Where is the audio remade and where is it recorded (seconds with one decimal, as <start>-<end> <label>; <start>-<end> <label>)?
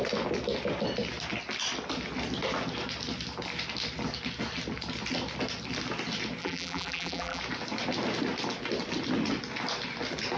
0.0-6.4 recorded; 6.4-7.4 remade; 7.4-10.4 recorded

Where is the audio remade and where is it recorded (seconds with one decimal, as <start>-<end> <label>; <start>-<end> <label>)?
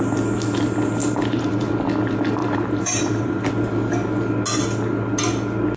0.0-1.0 recorded; 1.0-1.7 remade; 1.7-2.4 recorded; 2.4-3.5 remade; 3.5-5.8 recorded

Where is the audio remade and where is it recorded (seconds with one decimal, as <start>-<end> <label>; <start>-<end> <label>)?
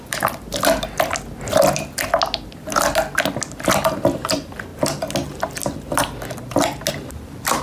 0.0-7.6 recorded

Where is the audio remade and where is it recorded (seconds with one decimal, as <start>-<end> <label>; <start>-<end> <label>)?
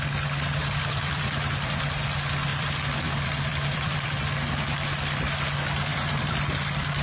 0.0-0.6 recorded; 0.6-2.0 remade; 2.0-2.5 recorded; 2.5-4.2 remade; 4.2-5.9 recorded; 5.9-6.5 remade; 6.5-7.0 recorded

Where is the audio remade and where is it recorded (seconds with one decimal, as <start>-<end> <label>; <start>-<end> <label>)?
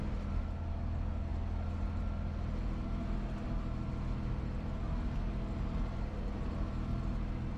0.0-7.6 recorded